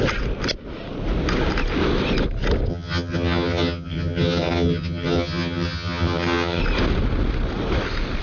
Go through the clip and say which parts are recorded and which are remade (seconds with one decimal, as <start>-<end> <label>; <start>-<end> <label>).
0.0-2.7 recorded; 2.7-6.6 remade; 6.6-8.2 recorded